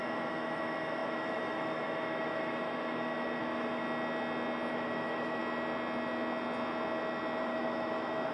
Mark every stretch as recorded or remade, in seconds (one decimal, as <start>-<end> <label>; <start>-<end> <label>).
0.0-3.8 remade; 3.8-4.7 recorded; 4.7-5.4 remade; 5.4-7.4 recorded; 7.4-8.3 remade